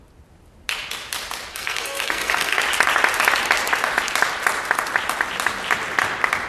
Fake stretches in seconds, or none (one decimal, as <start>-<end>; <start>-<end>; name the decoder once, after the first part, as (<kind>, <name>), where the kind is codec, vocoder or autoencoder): 1.5-2.6 (codec, SNAC)